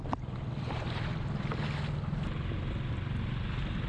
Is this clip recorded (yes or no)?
yes